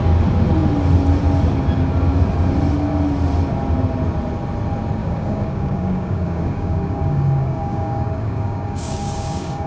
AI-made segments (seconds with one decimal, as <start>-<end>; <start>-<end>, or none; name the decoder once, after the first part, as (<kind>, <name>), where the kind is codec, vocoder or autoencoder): 5.0-9.7 (codec, DAC)